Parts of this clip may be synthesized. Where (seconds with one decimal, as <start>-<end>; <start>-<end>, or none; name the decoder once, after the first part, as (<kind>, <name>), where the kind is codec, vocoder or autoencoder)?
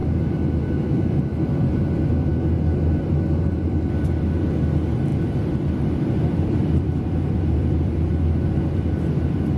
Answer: 1.0-2.3 (vocoder, BigVGAN v2); 3.0-9.6